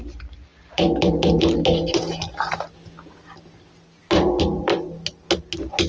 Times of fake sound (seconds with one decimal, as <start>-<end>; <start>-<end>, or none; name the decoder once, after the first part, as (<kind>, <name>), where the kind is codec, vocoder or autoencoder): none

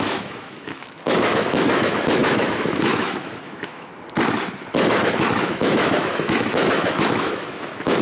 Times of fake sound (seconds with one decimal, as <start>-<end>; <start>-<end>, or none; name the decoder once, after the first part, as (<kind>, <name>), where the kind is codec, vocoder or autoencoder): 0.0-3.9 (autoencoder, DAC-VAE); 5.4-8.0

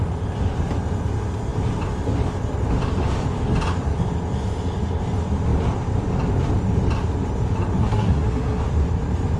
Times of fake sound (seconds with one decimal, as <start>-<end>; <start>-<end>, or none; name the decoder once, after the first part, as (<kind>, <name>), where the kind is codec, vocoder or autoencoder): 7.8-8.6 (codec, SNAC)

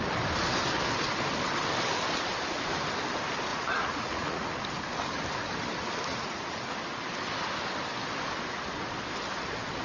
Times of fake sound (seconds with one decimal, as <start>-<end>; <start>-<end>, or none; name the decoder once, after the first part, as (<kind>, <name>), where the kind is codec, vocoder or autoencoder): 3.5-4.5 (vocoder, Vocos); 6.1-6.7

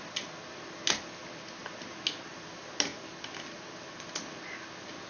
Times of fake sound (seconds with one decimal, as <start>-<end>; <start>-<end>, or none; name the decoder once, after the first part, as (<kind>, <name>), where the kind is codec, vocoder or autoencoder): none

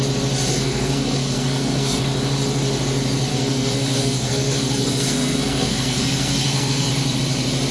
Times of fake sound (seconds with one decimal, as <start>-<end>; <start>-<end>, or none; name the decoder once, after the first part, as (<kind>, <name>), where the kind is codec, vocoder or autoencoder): 0.5-2.0 (codec, SNAC); 3.3-6.9